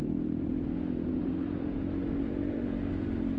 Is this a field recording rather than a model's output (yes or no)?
no